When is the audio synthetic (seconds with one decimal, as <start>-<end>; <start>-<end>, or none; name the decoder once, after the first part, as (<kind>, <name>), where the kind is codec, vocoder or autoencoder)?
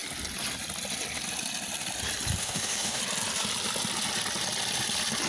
2.4-3.0 (autoencoder, DAC-VAE)